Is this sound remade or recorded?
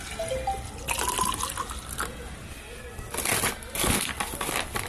recorded